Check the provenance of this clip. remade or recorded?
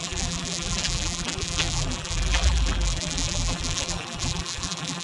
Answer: remade